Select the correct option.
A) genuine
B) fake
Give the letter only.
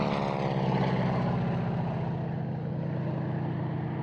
A